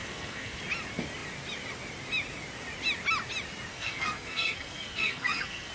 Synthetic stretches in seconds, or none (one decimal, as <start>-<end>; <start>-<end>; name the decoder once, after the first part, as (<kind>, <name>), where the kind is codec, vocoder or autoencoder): 0.0-0.6 (codec, SNAC); 3.7-5.7

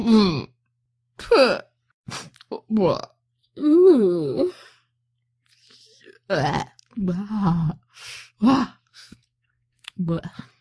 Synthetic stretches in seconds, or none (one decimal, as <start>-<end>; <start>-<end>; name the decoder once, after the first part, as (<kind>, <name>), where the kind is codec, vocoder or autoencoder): 3.4-4.5 (codec, SNAC); 8.9-10.2

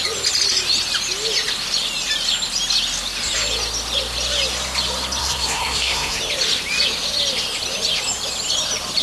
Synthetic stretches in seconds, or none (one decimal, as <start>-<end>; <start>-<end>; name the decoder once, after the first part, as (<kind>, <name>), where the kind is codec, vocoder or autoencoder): 5.2-6.2 (codec, SNAC)

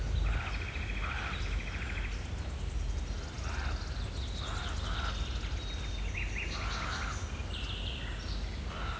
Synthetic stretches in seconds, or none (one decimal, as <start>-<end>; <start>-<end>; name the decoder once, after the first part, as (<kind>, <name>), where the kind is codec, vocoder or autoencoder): none

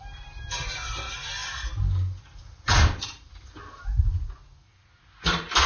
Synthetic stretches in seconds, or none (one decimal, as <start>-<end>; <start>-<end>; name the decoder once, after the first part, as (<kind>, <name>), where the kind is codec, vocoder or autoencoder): none